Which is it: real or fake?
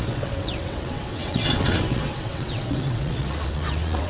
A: fake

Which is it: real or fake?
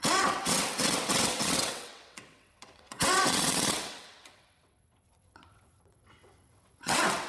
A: fake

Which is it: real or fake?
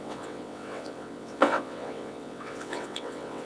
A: fake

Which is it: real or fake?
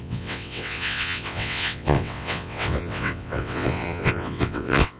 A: fake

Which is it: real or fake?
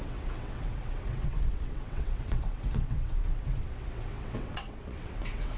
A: fake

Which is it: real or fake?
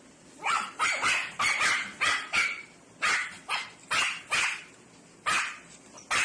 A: real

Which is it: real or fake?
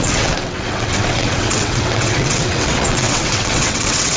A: fake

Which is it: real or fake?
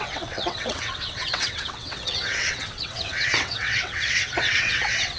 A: fake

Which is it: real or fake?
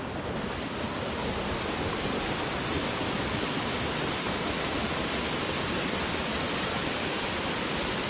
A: real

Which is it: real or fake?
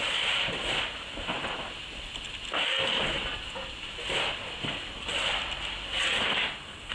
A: real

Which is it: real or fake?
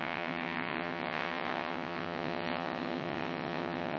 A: fake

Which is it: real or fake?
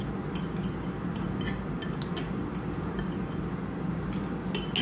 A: real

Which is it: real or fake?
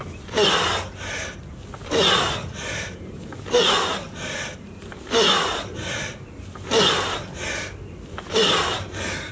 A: real